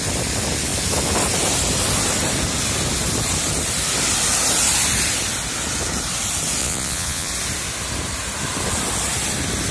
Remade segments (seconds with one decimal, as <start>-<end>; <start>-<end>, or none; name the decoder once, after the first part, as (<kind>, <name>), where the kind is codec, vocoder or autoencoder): 6.6-7.3 (vocoder, Vocos)